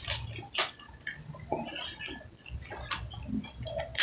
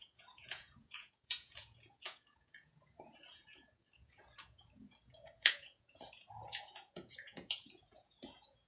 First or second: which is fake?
second